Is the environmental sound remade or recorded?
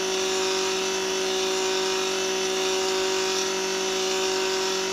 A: recorded